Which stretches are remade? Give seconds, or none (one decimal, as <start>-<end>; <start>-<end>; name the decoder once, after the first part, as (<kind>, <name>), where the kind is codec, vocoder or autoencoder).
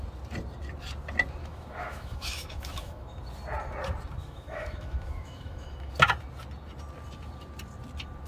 1.4-3.2 (autoencoder, DAC-VAE); 4.2-5.9